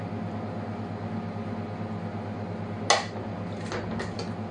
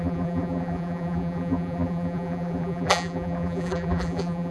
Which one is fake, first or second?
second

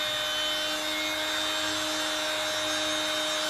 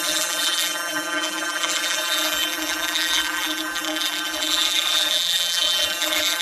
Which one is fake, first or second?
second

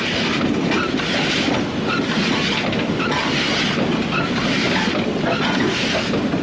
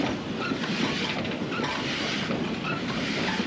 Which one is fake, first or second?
second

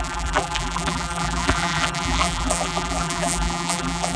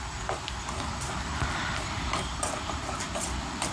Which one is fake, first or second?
first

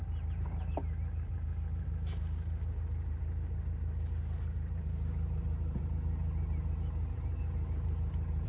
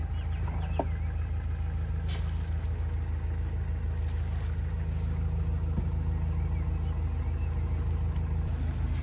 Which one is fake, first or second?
first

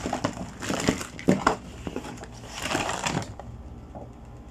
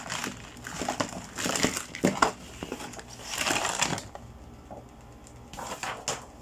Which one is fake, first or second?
first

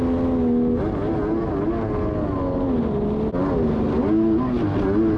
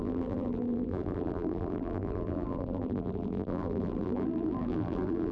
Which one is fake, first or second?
second